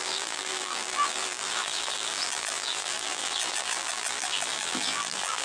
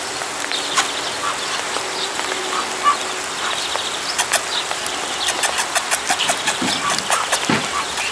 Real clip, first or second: second